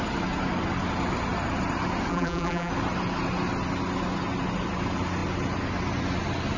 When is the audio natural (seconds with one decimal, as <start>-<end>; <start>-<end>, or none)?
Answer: 0.0-2.1; 2.7-6.6

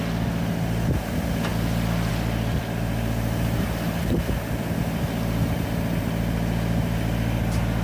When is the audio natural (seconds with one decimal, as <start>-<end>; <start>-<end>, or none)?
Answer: 0.0-7.8

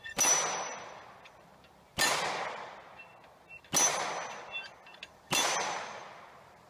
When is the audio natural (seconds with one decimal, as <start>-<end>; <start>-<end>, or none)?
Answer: 1.5-4.9

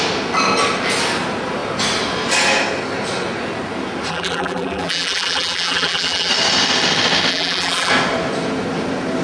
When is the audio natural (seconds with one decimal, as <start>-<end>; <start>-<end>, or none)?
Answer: 0.0-4.1; 6.3-7.3; 7.9-9.2